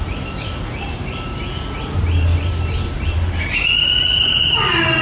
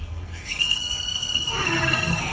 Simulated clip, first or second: second